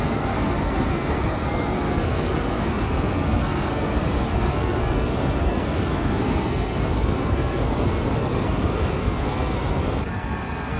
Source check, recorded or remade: remade